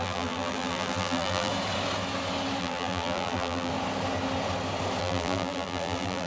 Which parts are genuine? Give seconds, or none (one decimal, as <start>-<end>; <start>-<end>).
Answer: 1.5-2.6; 3.7-5.0